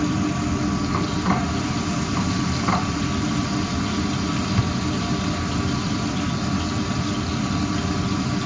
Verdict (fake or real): real